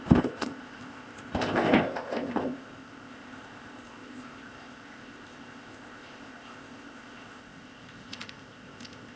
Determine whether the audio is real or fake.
fake